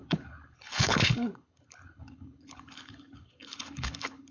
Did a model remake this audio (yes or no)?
yes